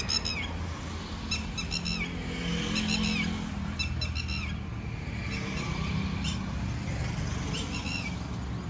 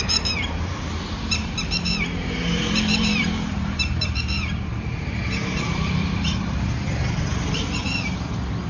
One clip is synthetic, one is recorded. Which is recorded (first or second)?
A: first